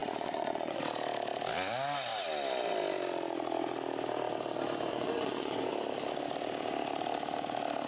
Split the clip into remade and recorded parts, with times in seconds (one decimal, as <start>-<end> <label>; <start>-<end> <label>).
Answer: 0.0-0.8 remade; 0.8-4.9 recorded; 4.9-5.7 remade; 5.7-7.9 recorded